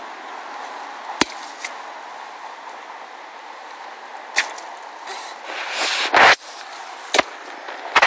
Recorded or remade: recorded